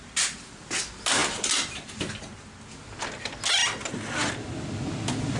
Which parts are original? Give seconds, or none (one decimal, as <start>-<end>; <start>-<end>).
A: 0.0-5.4